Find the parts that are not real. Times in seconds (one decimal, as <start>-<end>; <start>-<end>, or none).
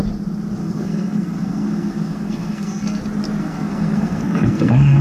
0.6-3.0; 3.4-5.0